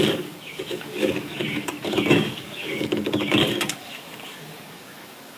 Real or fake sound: fake